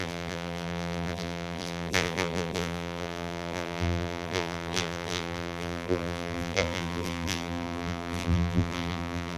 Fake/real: fake